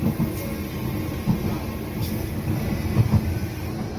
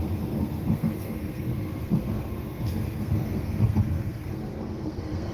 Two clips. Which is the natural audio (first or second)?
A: first